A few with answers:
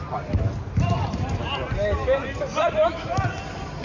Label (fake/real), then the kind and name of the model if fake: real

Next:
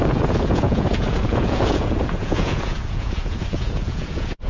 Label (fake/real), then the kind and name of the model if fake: fake, vocoder, Vocos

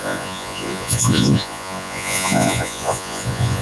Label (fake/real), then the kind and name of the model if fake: fake, vocoder, Vocos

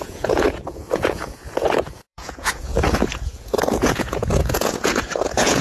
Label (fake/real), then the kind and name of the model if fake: fake, vocoder, Vocos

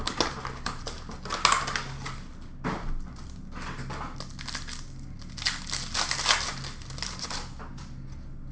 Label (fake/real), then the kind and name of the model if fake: real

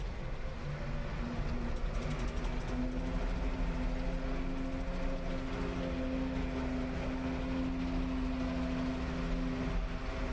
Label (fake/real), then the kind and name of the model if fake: real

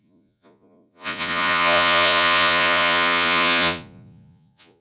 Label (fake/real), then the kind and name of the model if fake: fake, vocoder, Vocos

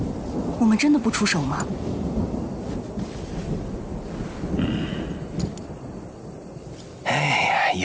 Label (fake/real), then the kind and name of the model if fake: real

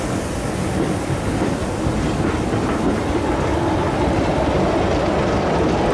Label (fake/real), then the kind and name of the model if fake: real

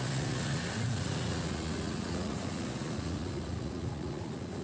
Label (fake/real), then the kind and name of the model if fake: fake, vocoder, Vocos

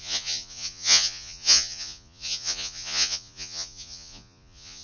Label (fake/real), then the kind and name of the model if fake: fake, vocoder, Vocos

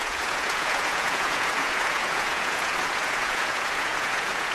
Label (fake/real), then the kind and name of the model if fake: fake, vocoder, Vocos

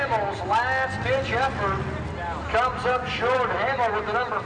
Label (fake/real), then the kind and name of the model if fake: real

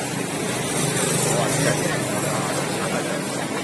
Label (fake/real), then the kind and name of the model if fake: real